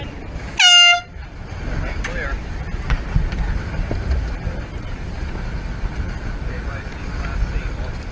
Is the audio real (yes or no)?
yes